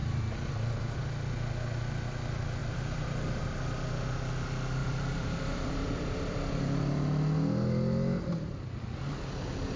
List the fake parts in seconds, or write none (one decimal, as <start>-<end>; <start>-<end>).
2.6-3.4; 4.8-6.6